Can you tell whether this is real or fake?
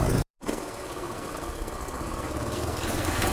fake